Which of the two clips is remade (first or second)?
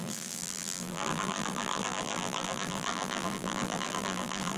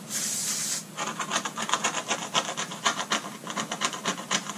first